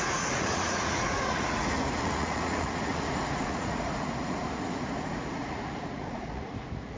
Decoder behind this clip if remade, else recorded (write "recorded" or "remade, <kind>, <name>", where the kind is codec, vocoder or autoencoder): remade, vocoder, Vocos